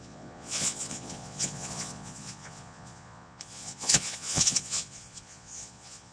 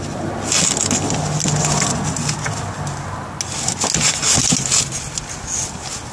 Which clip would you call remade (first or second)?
first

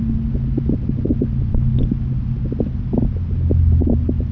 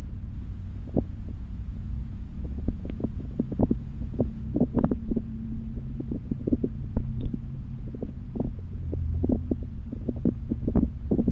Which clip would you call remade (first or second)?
second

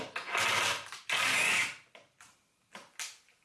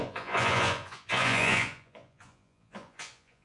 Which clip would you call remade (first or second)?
second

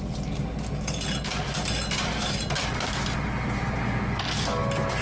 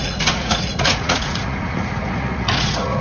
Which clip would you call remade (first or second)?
second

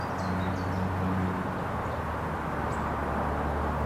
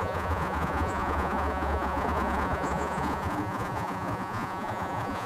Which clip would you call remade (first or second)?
second